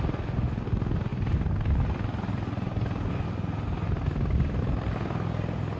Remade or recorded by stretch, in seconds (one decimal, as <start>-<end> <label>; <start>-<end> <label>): 0.0-5.8 recorded